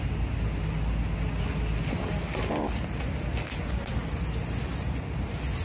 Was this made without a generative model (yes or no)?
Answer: yes